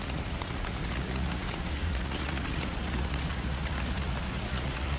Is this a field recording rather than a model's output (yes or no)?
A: no